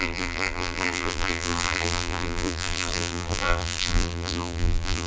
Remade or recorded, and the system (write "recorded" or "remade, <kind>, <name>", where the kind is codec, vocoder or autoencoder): remade, vocoder, BigVGAN v2